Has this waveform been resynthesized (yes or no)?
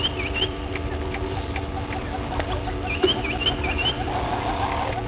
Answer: no